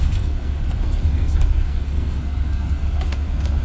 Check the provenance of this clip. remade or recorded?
remade